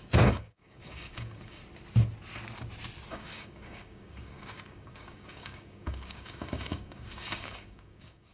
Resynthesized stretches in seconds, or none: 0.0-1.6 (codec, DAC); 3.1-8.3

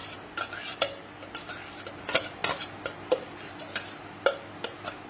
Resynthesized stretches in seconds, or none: none

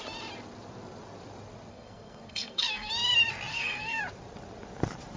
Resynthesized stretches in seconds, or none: 1.7-2.9 (codec, SNAC); 3.5-4.0

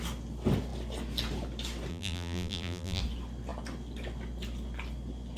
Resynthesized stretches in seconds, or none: 1.9-3.0 (vocoder, BigVGAN v2)

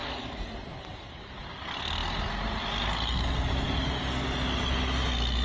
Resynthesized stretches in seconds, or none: none

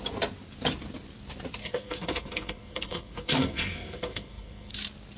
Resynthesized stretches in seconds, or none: 1.6-4.7 (codec, SNAC)

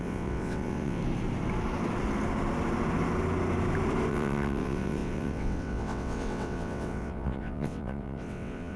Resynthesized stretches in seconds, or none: 0.0-1.0 (vocoder, WaveNeXt); 4.1-8.8

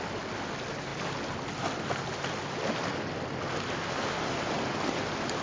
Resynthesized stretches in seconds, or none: none